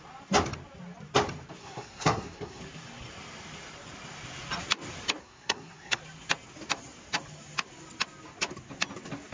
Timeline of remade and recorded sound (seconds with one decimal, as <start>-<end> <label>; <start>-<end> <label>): 0.0-1.6 recorded; 1.6-2.6 remade; 2.6-5.2 recorded; 5.2-6.0 remade; 6.0-9.3 recorded